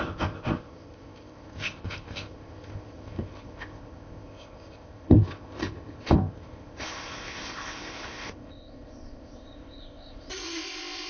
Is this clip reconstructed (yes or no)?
yes